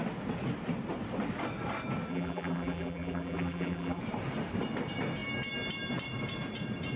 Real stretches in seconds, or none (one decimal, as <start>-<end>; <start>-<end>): 0.0-2.1; 4.0-7.0